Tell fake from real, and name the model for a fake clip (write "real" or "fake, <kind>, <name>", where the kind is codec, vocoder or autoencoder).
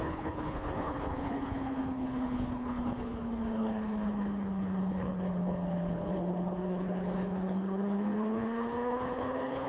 fake, codec, HILCodec